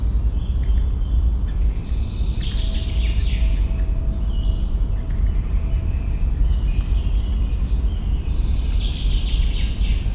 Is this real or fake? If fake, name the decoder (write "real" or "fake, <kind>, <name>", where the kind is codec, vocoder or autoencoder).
real